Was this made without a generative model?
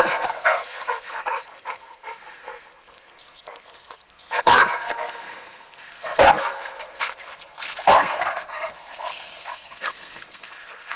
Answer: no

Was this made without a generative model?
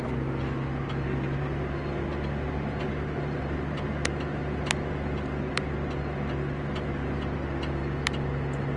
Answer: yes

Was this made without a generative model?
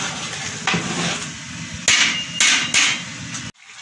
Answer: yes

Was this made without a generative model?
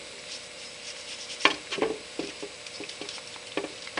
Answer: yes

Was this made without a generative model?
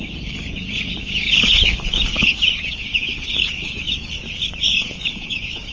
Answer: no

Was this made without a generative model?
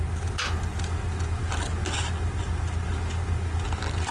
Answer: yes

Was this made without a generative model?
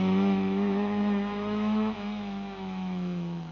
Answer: no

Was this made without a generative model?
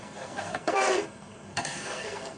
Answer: no